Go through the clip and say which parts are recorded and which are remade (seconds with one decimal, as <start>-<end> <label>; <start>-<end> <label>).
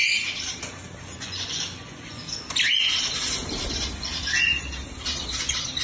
0.0-1.0 recorded; 1.0-2.2 remade; 2.2-5.8 recorded